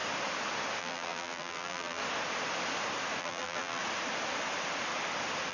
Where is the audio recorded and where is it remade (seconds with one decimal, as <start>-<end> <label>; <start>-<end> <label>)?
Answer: 0.0-0.8 recorded; 0.8-2.0 remade; 2.0-3.2 recorded; 3.2-3.8 remade; 3.8-5.5 recorded